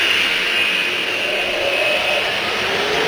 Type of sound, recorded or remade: recorded